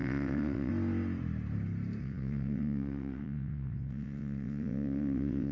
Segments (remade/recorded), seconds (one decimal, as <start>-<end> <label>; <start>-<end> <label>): 0.0-0.7 remade; 0.7-2.0 recorded; 2.0-5.5 remade